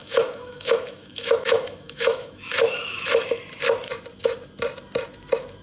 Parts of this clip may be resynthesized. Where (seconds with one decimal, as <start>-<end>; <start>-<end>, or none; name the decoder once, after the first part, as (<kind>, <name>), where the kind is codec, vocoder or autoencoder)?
0.0-3.4 (autoencoder, DAC-VAE)